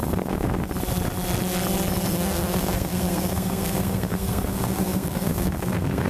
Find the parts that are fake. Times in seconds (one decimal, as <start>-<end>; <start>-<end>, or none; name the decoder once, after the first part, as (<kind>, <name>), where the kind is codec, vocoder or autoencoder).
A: 0.0-0.7 (codec, SNAC); 2.1-6.1

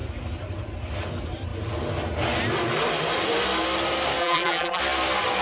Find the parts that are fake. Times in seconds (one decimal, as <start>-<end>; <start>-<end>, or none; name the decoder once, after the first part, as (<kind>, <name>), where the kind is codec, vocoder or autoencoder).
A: 4.2-4.8 (vocoder, BigVGAN v2)

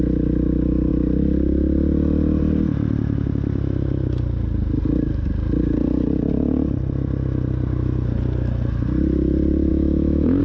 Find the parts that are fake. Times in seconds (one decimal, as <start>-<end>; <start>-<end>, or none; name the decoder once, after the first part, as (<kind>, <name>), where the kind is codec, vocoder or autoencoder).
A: 9.7-10.4 (autoencoder, DAC-VAE)

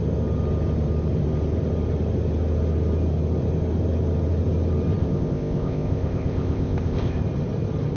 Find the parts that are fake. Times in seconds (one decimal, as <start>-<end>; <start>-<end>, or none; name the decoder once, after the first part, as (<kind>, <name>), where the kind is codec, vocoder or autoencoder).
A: 5.0-7.2 (codec, ZipCodec)

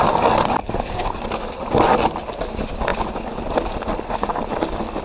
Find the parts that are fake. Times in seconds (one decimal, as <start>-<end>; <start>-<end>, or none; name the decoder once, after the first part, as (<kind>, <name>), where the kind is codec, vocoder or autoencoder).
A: 0.6-1.2 (codec, SNAC)

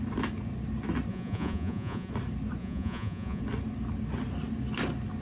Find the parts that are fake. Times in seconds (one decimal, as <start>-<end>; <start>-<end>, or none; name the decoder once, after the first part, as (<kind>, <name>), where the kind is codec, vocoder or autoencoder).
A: 1.1-2.1 (vocoder, Vocos); 2.6-3.4

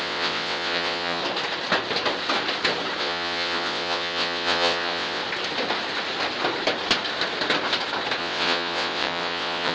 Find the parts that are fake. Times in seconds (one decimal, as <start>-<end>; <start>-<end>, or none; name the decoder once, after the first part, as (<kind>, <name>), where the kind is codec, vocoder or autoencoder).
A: 0.0-1.2 (vocoder, WaveNeXt); 3.0-5.2; 8.2-9.7